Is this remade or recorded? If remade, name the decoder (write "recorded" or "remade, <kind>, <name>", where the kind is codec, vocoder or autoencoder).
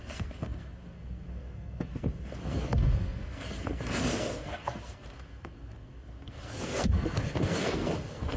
remade, codec, SNAC